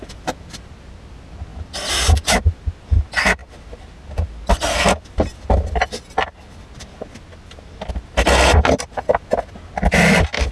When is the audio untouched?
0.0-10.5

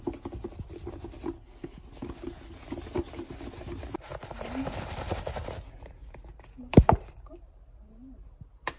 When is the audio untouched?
0.0-4.1; 7.8-8.8

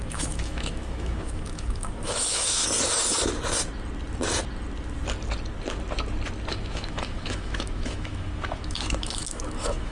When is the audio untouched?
2.6-6.5

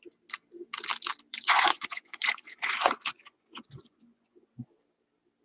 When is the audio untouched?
0.0-1.3; 4.5-5.4

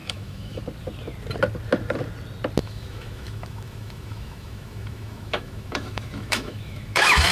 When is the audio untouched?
0.6-2.6

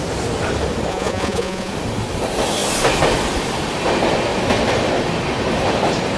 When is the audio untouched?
0.0-0.9; 1.7-6.2

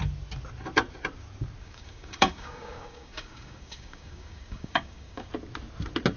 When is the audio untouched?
0.0-1.6; 5.3-6.2

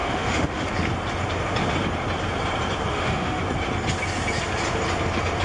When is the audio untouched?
0.7-2.9; 3.4-5.4